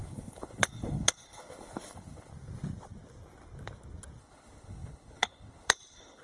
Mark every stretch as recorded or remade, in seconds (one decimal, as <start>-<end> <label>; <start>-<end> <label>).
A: 0.0-2.3 remade; 2.3-4.2 recorded; 4.2-6.2 remade